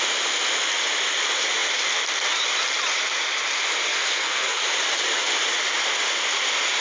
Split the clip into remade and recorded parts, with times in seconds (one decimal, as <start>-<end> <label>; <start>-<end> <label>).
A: 0.0-3.9 recorded; 3.9-4.6 remade; 4.6-6.8 recorded